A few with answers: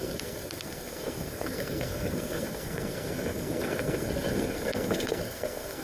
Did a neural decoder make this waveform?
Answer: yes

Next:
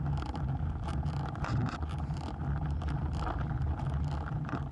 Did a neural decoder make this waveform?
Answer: no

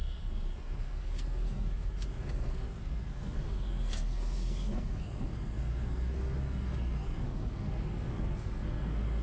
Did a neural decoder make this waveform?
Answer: yes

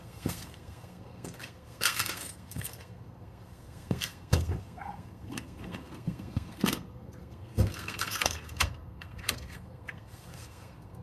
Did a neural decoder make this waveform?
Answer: yes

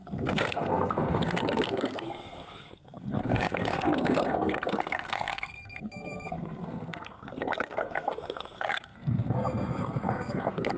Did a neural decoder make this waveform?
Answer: yes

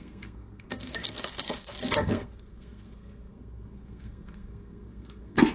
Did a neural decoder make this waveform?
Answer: yes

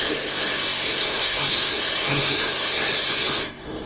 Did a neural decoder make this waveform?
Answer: yes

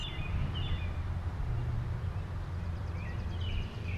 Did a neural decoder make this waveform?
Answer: no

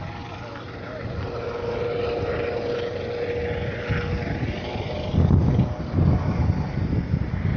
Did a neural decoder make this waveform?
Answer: no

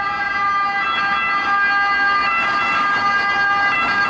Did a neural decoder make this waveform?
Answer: no